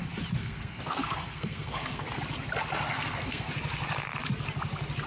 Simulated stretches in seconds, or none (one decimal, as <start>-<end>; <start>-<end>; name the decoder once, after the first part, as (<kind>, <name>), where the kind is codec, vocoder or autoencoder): 0.4-2.2 (codec, SNAC); 2.9-3.5